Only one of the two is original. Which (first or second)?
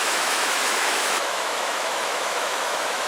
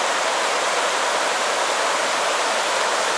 second